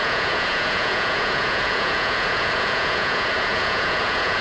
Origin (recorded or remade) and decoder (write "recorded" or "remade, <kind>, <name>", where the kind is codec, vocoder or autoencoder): remade, vocoder, Vocos